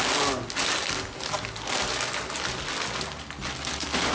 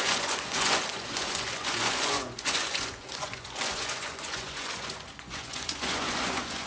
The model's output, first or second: second